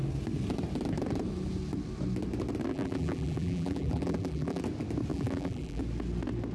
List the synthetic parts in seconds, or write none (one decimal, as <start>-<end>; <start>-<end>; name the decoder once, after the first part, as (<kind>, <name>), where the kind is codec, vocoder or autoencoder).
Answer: 2.7-4.6 (vocoder, BigVGAN v2); 5.1-5.8